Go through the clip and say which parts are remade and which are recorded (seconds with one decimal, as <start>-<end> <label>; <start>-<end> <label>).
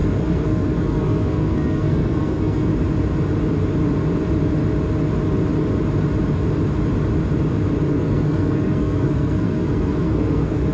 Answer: 0.0-2.7 remade; 2.7-7.9 recorded; 7.9-10.7 remade